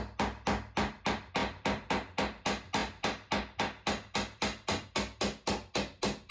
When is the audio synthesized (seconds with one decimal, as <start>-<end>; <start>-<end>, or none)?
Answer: none